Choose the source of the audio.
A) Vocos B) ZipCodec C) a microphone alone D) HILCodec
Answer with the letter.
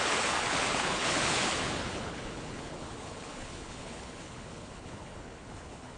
D